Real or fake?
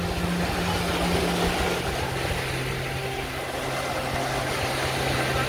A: real